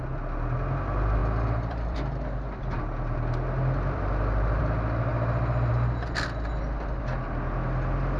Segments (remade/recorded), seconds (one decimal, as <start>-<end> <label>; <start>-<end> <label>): 0.0-1.2 recorded; 1.2-4.6 remade; 4.6-8.2 recorded